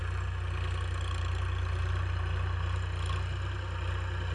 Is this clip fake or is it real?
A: real